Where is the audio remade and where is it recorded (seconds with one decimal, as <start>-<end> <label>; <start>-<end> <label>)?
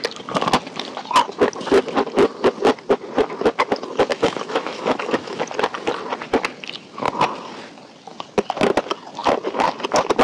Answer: 0.0-4.1 recorded; 4.1-5.4 remade; 5.4-10.2 recorded